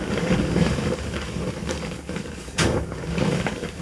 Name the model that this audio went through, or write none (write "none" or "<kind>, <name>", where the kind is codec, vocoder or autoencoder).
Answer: codec, DAC